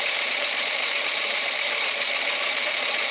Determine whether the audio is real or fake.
fake